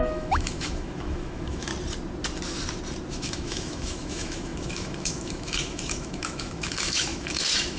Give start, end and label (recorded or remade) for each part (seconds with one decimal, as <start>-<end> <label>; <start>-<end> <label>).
0.0-1.7 remade; 1.7-3.1 recorded; 3.1-7.8 remade